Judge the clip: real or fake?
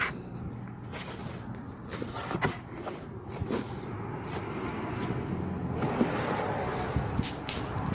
real